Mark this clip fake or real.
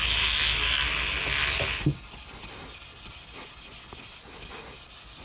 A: real